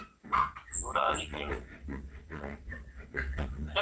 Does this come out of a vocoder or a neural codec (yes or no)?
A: yes